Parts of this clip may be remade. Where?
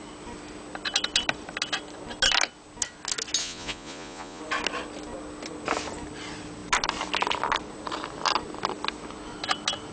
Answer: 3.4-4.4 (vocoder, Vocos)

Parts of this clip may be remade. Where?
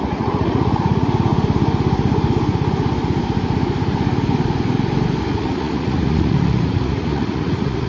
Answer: 0.0-1.3 (vocoder, Vocos); 5.3-7.9